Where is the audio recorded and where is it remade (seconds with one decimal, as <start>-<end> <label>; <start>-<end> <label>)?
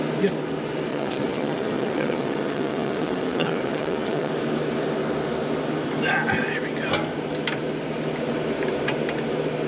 0.0-0.9 recorded; 0.9-4.3 remade; 4.3-9.7 recorded